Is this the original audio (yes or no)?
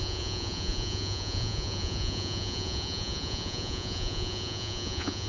no